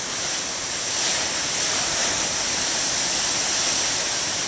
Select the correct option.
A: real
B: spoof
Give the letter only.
B